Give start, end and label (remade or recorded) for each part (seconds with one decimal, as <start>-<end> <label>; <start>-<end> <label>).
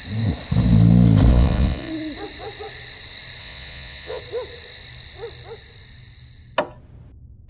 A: 0.0-1.3 recorded; 1.3-1.9 remade; 1.9-3.4 recorded; 3.4-4.2 remade; 4.2-7.5 recorded